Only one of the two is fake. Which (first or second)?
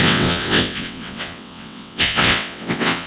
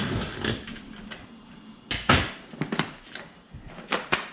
first